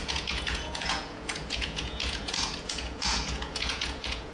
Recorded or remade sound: remade